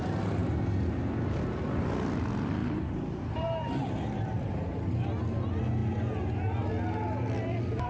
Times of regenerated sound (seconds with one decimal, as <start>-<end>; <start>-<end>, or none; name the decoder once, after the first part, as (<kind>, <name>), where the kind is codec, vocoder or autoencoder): 2.6-4.8 (vocoder, BigVGAN v2)